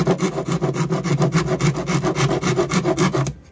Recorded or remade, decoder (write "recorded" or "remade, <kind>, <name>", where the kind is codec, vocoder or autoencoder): recorded